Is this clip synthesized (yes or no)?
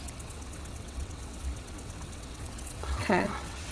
yes